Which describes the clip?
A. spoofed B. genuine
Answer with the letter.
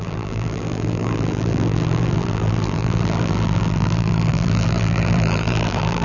A